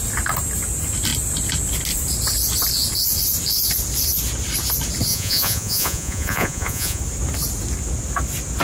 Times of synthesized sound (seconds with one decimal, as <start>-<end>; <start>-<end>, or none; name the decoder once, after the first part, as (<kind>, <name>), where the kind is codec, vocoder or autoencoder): 5.1-7.0 (vocoder, Vocos)